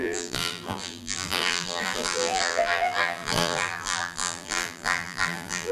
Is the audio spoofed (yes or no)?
yes